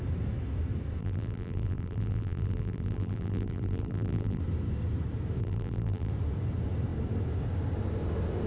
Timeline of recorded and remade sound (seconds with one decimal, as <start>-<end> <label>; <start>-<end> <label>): 0.0-1.0 recorded; 1.0-4.4 remade; 4.4-5.4 recorded; 5.4-6.1 remade; 6.1-8.5 recorded